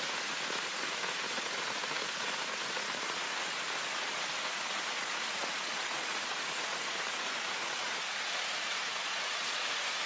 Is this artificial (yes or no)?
yes